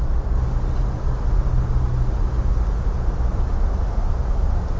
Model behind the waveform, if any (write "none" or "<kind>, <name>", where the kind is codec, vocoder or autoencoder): none